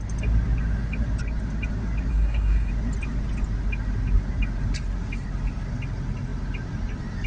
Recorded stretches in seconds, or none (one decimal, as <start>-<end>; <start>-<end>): 0.0-2.1; 2.7-7.3